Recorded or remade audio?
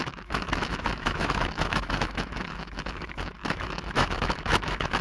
remade